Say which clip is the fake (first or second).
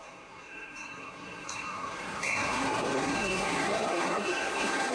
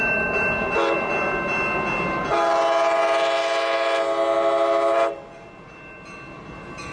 first